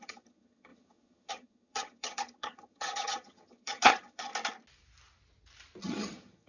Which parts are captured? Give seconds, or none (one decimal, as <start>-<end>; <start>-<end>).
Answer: 4.3-5.8